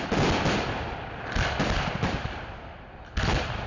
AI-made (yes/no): no